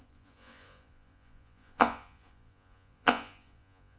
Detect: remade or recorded remade